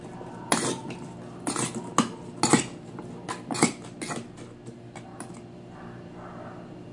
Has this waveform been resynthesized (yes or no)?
no